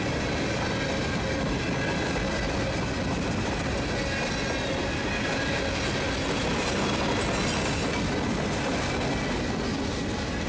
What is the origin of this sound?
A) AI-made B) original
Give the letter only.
B